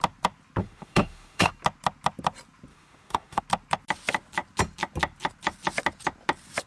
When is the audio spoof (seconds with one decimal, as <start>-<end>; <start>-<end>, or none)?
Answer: 0.6-1.5; 2.7-3.4